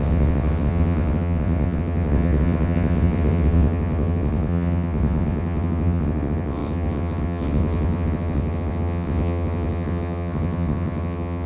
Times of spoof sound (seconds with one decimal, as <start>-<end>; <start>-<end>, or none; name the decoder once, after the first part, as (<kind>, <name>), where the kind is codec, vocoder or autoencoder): 0.0-11.5 (vocoder, WaveNeXt)